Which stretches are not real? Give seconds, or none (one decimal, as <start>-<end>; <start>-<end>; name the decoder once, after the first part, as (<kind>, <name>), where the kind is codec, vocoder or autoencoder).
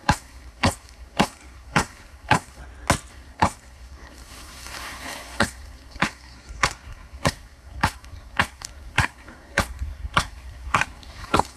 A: 0.0-2.6 (codec, SNAC); 3.1-11.6